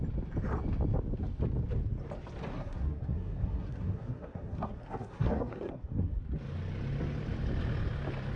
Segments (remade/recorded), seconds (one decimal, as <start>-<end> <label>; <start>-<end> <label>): 0.0-2.5 recorded; 2.5-6.2 remade; 6.2-8.4 recorded